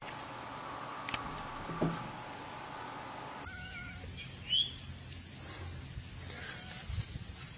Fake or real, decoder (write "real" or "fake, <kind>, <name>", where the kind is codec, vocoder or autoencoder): real